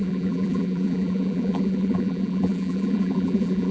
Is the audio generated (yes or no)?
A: yes